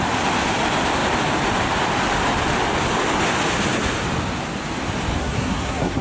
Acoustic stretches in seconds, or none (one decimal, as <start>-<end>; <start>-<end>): 0.0-5.2